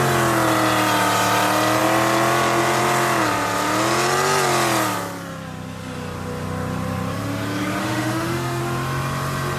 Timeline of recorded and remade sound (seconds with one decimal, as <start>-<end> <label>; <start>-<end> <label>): 0.0-7.8 recorded; 7.8-8.6 remade; 8.6-9.6 recorded